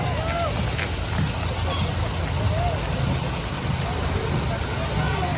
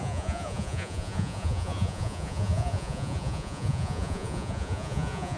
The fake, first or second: second